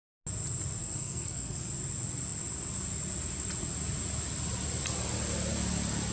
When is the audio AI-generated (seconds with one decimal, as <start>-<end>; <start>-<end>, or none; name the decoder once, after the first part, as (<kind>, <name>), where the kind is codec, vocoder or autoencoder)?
0.8-1.7 (codec, SNAC)